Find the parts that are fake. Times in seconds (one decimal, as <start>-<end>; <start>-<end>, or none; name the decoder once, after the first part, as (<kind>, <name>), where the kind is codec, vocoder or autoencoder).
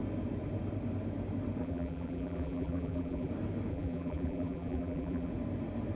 1.6-3.3 (vocoder, BigVGAN v2); 3.7-5.3